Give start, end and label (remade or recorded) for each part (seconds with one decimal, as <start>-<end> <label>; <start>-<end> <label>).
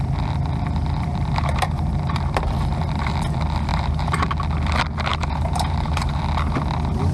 0.0-1.1 recorded; 1.1-3.1 remade; 3.1-3.7 recorded; 3.7-4.3 remade; 4.3-5.1 recorded; 5.1-6.2 remade; 6.2-7.1 recorded